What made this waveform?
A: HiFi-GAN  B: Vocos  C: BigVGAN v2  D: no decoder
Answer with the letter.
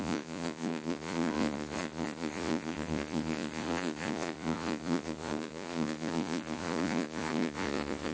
B